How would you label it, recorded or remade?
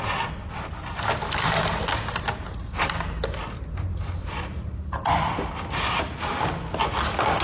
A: recorded